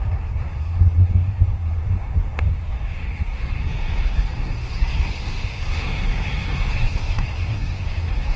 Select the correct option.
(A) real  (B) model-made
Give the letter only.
B